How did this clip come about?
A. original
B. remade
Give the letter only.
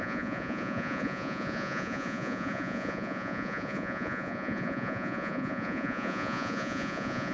B